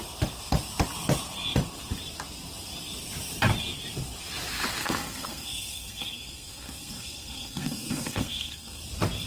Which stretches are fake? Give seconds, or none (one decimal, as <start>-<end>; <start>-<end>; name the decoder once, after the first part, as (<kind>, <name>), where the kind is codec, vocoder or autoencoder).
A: 4.8-8.8 (codec, SNAC)